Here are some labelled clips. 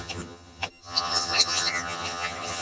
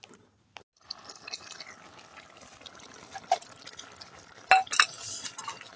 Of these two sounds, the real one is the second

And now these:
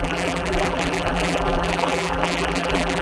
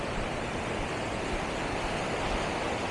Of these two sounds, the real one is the second